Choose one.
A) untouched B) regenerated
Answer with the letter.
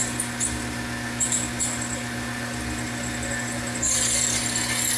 A